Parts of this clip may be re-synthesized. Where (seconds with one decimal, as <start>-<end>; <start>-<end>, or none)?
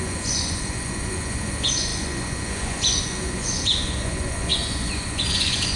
0.0-5.8